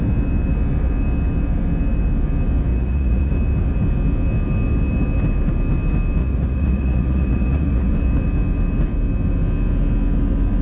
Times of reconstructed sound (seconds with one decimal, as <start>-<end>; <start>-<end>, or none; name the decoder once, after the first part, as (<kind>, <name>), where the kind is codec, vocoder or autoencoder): 2.7-3.3 (vocoder, Vocos); 6.2-7.9